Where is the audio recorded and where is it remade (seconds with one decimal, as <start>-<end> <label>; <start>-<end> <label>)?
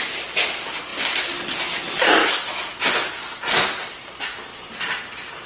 0.0-5.5 recorded